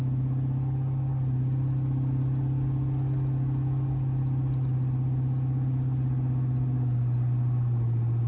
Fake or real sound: real